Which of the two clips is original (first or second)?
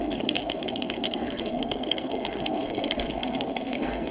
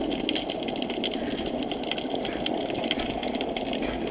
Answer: second